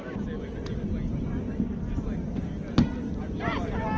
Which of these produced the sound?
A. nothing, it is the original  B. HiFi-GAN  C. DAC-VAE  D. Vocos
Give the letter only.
A